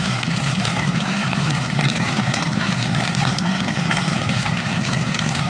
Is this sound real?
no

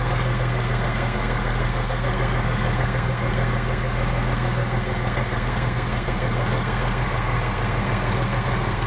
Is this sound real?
no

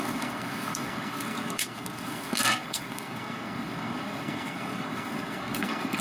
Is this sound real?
no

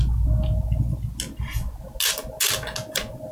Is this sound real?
yes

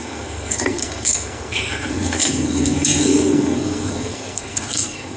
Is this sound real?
no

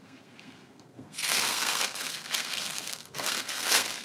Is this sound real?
no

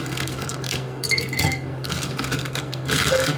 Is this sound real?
no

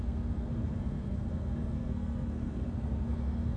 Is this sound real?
no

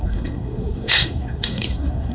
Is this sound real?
no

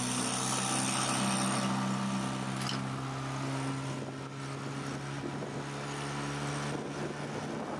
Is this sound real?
yes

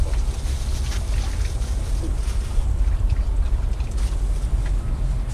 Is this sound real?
yes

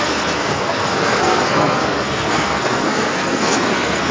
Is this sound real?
no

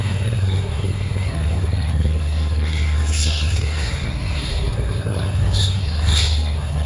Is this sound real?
no